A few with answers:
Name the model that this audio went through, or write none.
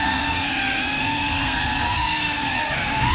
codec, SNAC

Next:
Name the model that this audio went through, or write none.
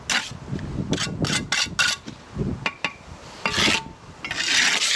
none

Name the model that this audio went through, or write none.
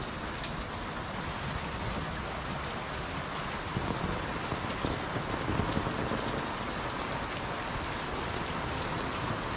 none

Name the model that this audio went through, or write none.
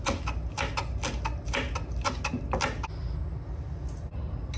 none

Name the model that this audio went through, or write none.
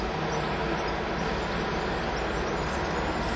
none